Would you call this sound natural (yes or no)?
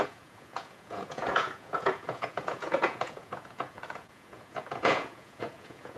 no